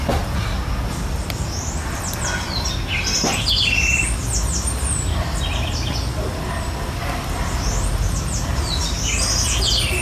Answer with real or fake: real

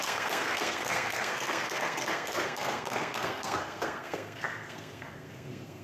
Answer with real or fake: fake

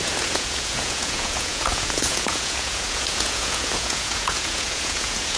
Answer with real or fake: fake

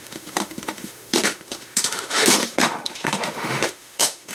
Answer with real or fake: fake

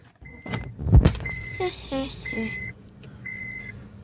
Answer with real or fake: fake